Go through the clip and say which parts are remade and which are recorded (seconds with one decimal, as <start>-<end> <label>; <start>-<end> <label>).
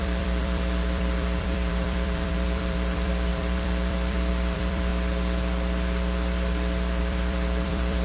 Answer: 0.0-4.9 remade; 4.9-7.0 recorded; 7.0-8.0 remade